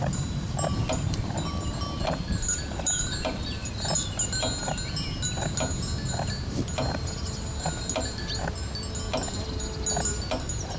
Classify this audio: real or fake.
real